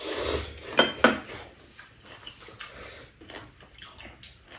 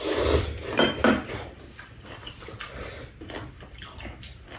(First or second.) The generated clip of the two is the second